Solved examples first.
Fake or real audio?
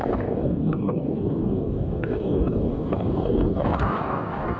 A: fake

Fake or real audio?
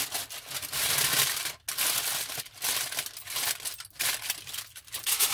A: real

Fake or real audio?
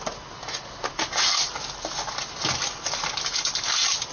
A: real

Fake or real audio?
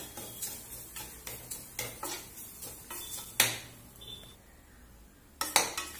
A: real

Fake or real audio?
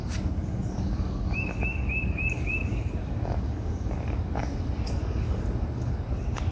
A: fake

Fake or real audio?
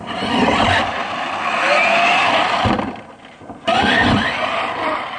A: real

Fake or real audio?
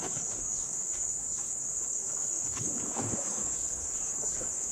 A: fake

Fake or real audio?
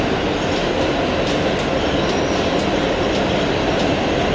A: real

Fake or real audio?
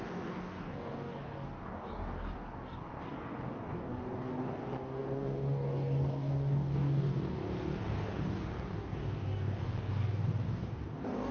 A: fake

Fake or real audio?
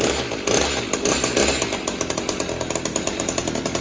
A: real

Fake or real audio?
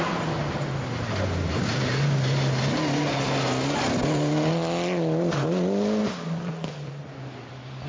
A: real